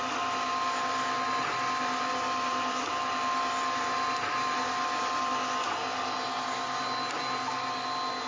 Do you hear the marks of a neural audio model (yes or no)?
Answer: no